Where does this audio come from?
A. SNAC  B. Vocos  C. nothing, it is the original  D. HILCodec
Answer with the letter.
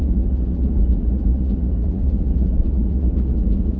B